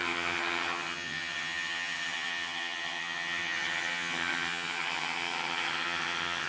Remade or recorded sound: remade